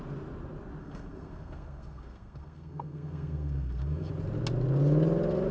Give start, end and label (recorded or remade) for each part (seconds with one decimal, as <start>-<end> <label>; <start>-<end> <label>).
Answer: 0.0-0.8 recorded; 0.8-4.1 remade; 4.1-5.5 recorded